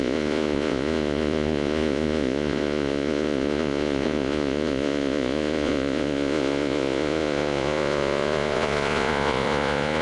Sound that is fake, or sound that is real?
fake